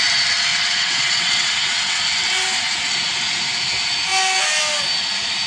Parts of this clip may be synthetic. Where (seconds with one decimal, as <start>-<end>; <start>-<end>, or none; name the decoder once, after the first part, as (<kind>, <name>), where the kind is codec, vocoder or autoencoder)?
0.5-2.0 (vocoder, WaveNeXt)